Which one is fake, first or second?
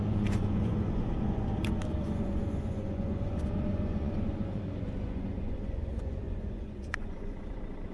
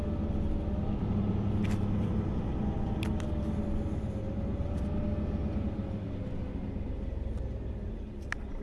first